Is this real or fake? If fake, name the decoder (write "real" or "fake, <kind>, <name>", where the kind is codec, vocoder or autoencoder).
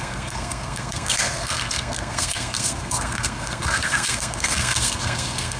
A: fake, codec, SNAC